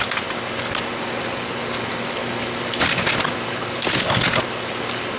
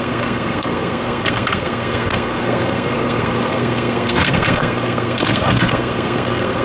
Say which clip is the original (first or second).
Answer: first